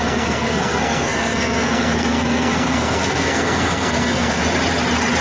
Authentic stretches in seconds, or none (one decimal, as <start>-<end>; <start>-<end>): 4.4-5.2